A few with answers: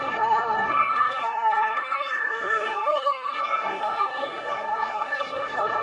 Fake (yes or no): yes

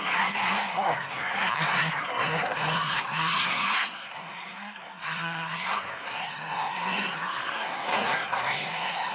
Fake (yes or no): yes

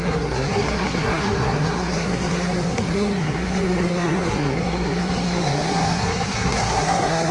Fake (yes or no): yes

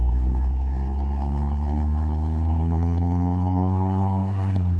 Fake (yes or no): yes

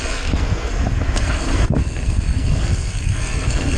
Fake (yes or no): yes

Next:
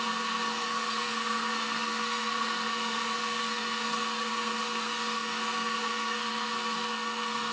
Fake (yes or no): yes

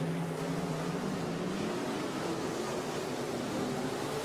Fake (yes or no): no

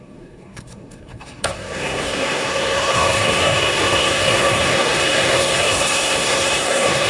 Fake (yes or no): yes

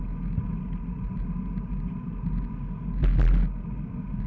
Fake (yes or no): no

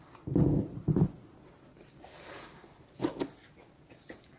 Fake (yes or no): no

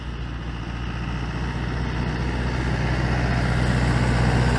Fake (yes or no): no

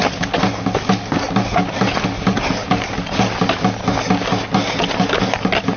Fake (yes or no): no